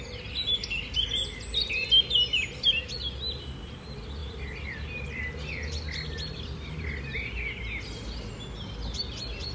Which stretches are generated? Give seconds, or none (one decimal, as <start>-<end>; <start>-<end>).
none